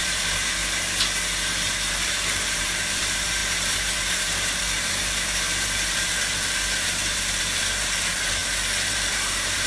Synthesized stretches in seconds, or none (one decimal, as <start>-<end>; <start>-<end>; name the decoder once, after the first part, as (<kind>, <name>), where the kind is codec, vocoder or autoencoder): 0.0-0.6 (vocoder, BigVGAN v2); 1.7-8.4; 8.9-9.7

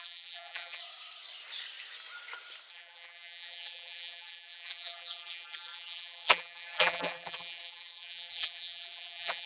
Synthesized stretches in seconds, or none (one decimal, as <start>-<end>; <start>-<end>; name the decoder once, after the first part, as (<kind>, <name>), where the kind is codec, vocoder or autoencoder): 0.0-0.8 (vocoder, BigVGAN v2); 2.7-9.5

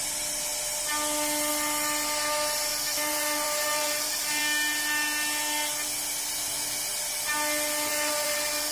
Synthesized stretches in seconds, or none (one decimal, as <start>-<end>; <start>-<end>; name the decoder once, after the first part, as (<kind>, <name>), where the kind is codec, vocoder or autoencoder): 2.7-4.4 (vocoder, BigVGAN v2); 7.9-8.7